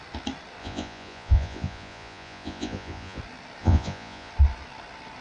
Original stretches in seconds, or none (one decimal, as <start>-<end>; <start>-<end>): 0.0-0.6; 3.2-3.6; 4.3-5.2